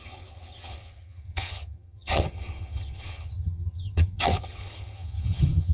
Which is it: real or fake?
fake